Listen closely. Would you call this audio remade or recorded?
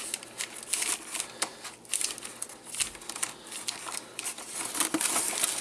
recorded